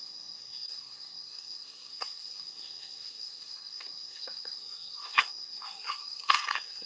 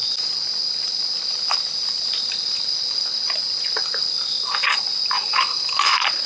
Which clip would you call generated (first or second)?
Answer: first